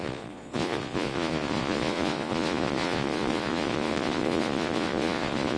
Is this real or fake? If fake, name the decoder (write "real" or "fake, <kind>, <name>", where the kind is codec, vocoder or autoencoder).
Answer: fake, vocoder, Vocos